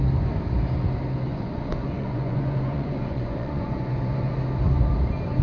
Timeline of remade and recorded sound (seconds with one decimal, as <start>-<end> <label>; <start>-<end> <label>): 0.0-1.3 recorded; 1.3-4.3 remade; 4.3-5.4 recorded